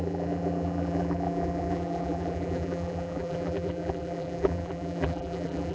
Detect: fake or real fake